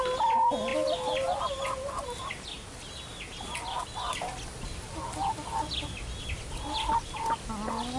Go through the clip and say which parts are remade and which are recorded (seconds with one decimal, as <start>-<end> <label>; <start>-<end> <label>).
0.0-8.0 recorded